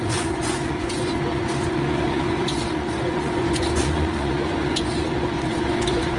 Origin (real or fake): fake